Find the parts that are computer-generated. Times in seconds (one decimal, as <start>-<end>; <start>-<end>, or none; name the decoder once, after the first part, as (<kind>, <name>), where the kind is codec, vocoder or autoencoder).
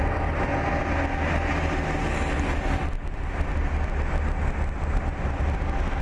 none